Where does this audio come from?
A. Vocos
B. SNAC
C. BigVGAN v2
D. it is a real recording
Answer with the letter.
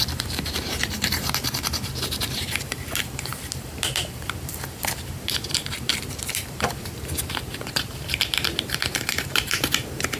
C